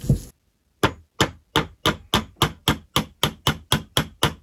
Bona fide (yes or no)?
yes